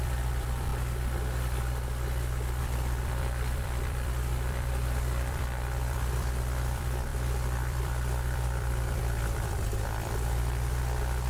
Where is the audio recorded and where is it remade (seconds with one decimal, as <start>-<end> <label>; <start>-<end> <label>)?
0.0-0.7 remade; 0.7-2.6 recorded; 2.6-11.3 remade